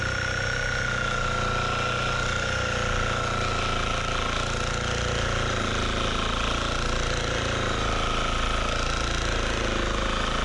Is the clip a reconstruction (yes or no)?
no